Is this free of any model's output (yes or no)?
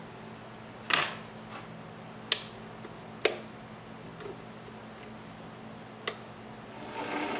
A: yes